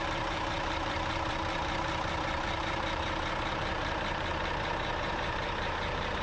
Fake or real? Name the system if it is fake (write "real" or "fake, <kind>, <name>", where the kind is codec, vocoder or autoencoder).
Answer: fake, vocoder, BigVGAN v2